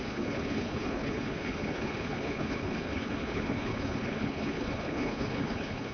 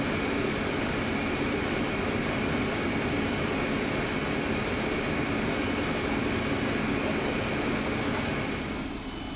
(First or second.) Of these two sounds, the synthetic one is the first